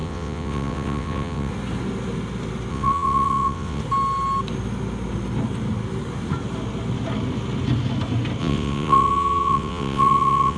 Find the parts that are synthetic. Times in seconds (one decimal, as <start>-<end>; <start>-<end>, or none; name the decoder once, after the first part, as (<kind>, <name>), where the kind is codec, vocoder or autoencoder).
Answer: 0.0-1.5 (vocoder, WaveNeXt); 2.7-3.8; 8.4-10.6